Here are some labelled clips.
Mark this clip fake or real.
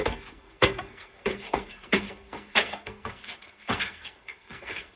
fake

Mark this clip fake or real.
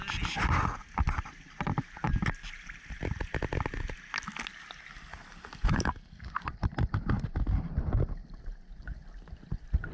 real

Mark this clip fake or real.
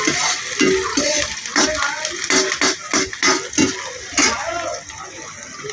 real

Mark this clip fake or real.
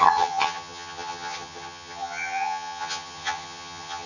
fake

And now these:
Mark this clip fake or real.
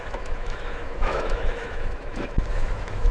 fake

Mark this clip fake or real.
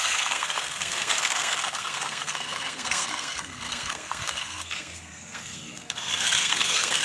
fake